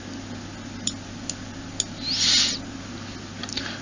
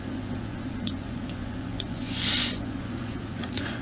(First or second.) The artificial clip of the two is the second